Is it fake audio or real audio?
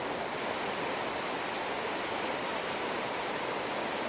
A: fake